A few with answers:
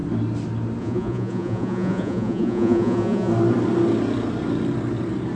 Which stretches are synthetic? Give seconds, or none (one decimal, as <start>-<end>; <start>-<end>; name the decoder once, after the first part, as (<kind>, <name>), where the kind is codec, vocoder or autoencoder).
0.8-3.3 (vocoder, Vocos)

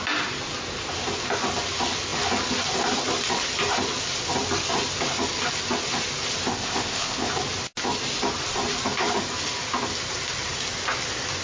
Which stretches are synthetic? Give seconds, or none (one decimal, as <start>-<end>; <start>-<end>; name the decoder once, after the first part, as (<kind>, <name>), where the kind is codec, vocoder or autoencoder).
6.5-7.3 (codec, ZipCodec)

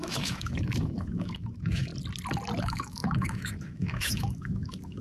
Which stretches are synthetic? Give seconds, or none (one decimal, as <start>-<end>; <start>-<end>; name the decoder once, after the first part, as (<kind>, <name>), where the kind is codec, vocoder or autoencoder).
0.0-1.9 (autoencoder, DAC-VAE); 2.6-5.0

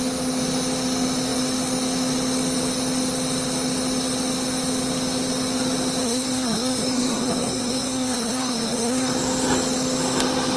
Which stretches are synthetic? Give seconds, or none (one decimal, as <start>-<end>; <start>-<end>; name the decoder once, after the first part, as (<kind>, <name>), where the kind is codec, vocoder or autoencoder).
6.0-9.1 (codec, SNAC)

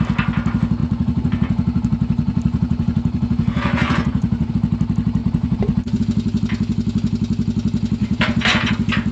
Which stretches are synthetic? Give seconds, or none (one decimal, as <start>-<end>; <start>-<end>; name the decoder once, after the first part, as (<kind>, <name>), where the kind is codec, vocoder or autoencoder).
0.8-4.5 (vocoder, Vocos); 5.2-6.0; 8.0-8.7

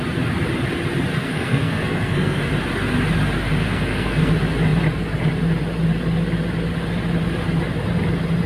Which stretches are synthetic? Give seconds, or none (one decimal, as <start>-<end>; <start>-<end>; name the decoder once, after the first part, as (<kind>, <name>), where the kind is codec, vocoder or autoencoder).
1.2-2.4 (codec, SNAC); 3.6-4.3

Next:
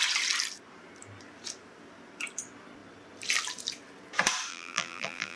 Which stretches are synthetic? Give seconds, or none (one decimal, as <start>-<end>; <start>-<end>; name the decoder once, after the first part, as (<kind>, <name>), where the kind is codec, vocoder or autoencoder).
4.5-5.4 (vocoder, BigVGAN v2)